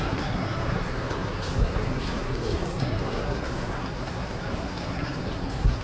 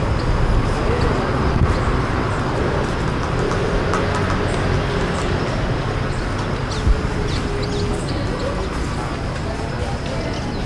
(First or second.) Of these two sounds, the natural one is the second